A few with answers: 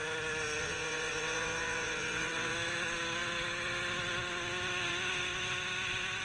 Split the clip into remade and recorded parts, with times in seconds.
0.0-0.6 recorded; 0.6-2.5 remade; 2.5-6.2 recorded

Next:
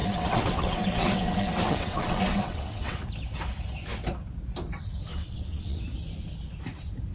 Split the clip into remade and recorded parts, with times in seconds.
0.0-3.0 remade; 3.0-5.1 recorded; 5.1-5.8 remade; 5.8-7.1 recorded

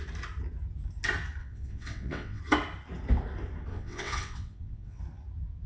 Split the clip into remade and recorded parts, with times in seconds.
0.0-1.4 recorded; 1.4-2.4 remade; 2.4-3.7 recorded; 3.7-5.0 remade; 5.0-5.7 recorded